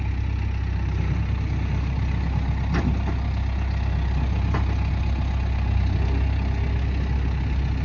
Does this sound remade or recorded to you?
recorded